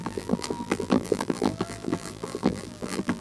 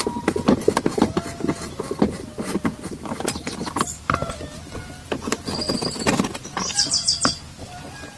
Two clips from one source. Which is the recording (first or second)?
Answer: second